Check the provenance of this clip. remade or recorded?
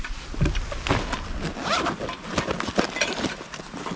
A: recorded